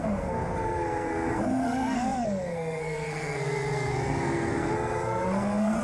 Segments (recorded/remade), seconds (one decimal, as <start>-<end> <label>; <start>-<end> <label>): 0.0-5.8 remade